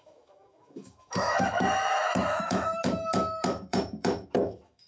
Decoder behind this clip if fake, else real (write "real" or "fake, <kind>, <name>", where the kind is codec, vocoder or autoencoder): fake, autoencoder, DAC-VAE